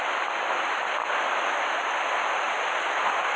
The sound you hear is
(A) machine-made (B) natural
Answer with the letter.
B